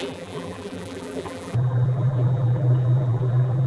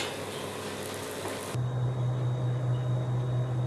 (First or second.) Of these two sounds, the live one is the second